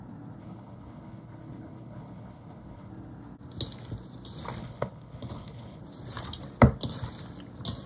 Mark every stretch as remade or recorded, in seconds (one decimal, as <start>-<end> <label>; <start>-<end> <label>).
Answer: 0.0-0.4 recorded; 0.4-2.9 remade; 2.9-4.6 recorded; 4.6-5.8 remade; 5.8-7.9 recorded